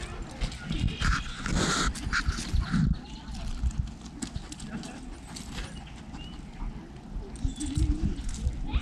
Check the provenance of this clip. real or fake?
real